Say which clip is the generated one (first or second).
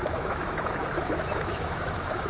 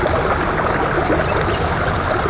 first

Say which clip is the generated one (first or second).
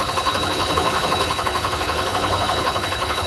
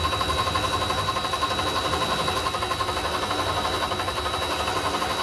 first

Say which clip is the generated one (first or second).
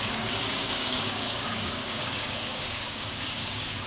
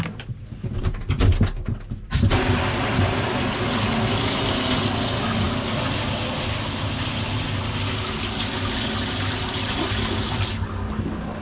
first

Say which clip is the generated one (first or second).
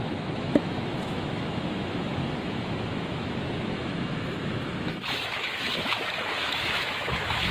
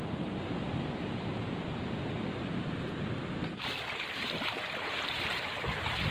first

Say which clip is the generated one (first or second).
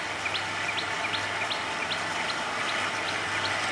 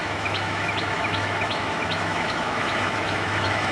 second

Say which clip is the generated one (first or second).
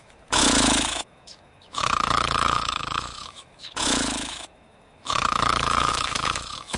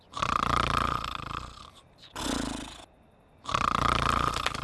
first